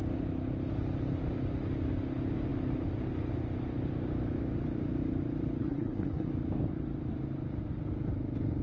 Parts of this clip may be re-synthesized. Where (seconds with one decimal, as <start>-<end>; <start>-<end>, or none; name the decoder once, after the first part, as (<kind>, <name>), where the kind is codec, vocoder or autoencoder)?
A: 5.6-6.3 (codec, SNAC)